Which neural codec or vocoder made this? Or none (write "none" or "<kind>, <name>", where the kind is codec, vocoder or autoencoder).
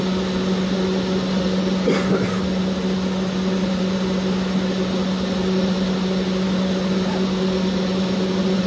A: none